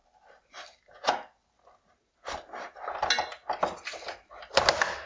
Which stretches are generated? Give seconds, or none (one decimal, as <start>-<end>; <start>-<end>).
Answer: none